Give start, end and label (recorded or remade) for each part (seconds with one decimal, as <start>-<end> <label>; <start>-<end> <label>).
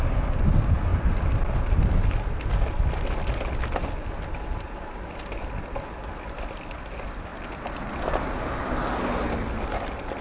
0.0-10.2 recorded